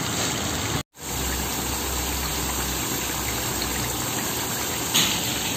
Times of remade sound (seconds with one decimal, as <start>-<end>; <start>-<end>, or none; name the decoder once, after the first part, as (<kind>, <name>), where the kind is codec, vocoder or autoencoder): 2.3-5.6 (vocoder, BigVGAN v2)